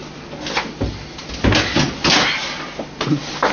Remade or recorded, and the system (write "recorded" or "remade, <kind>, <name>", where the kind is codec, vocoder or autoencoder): recorded